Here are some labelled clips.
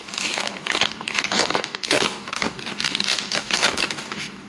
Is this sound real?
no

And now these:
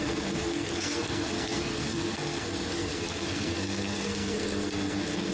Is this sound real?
no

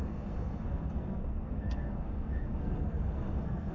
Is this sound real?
no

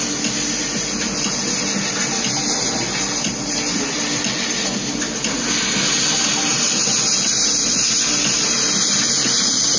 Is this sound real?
yes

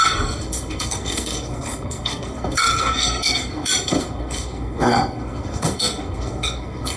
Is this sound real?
no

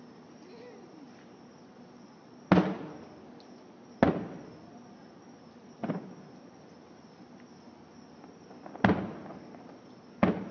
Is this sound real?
yes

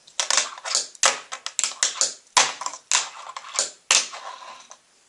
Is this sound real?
yes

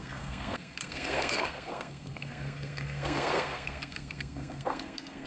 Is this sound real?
no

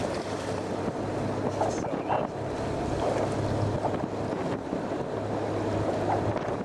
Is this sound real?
yes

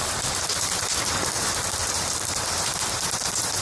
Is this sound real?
no